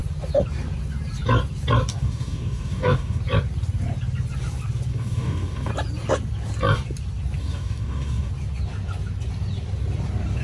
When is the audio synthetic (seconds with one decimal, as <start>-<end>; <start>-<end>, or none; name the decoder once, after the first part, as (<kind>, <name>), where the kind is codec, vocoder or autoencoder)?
1.9-3.2 (codec, DAC); 4.9-5.7; 7.4-8.3